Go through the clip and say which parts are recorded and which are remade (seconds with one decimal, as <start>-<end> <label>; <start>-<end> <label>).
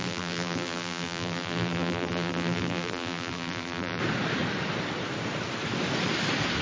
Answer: 0.0-4.0 remade; 4.0-6.6 recorded